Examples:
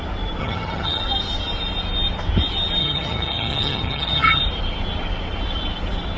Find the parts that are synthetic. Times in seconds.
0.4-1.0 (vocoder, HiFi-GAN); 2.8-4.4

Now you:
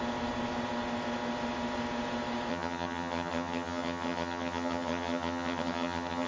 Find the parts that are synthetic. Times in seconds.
2.5-6.3 (vocoder, HiFi-GAN)

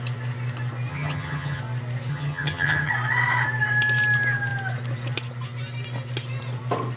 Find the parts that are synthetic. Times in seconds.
0.9-1.6 (vocoder, HiFi-GAN); 2.1-2.9

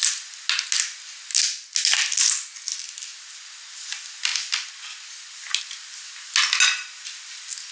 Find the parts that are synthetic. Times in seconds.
none

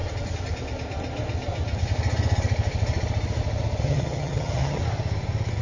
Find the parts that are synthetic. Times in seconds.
3.8-4.8 (vocoder, HiFi-GAN)

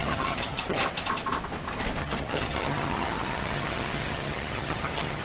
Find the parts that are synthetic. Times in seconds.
0.0-0.8 (vocoder, HiFi-GAN); 2.0-5.2